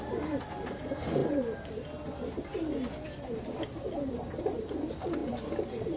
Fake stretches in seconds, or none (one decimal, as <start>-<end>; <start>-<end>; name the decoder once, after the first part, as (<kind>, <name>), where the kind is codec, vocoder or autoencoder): 1.2-4.8 (vocoder, BigVGAN v2); 5.2-6.0